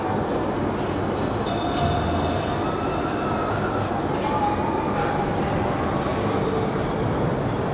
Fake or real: real